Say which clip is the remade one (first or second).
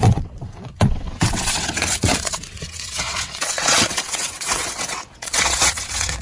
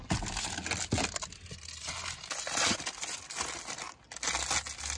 first